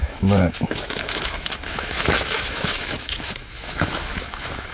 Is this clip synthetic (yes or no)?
yes